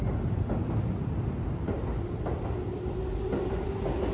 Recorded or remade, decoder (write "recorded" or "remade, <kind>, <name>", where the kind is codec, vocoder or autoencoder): recorded